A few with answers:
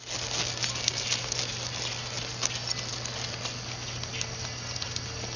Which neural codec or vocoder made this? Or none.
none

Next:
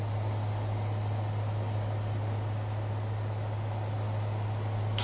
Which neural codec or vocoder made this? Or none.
none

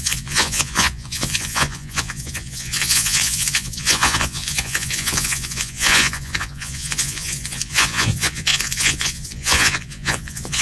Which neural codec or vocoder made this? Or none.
vocoder, Vocos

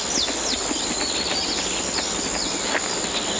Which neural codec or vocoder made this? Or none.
none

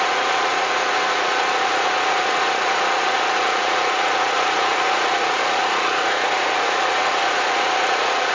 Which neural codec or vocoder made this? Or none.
vocoder, Vocos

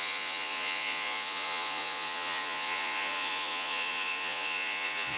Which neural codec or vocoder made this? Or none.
vocoder, Vocos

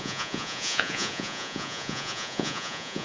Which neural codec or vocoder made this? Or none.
vocoder, Vocos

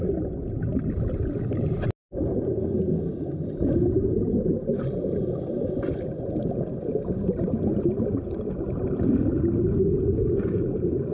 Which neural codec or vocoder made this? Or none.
none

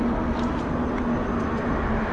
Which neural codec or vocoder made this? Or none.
none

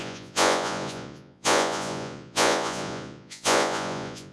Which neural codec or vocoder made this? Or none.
vocoder, Vocos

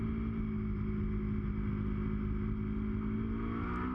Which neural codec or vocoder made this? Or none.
none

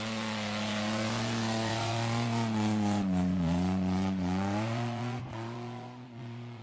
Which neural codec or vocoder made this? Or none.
vocoder, Vocos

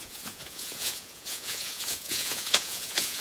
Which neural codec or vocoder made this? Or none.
vocoder, Vocos